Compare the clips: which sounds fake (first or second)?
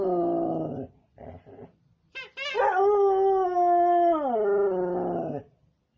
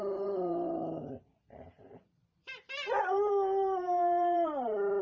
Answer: second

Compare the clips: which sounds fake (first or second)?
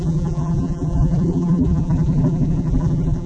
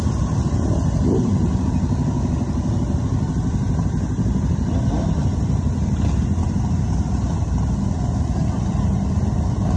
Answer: first